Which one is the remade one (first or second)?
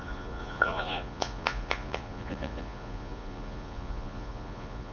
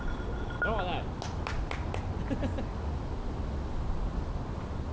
first